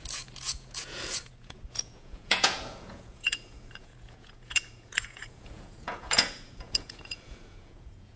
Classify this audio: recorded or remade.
remade